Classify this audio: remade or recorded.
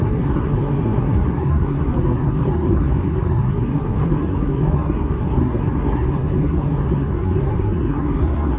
remade